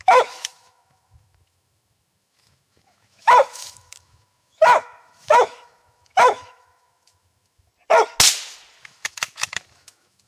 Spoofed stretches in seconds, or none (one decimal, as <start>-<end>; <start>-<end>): 0.0-7.7; 8.8-10.3